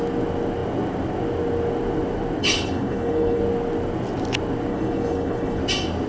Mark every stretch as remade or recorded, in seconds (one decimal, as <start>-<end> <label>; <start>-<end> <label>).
0.0-2.4 recorded; 2.4-3.4 remade; 3.4-4.7 recorded; 4.7-5.6 remade; 5.6-6.1 recorded